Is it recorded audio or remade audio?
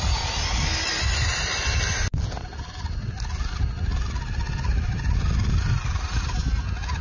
recorded